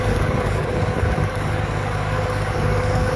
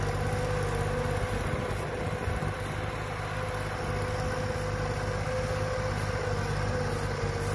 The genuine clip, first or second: second